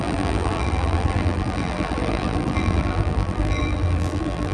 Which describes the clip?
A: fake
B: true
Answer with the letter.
A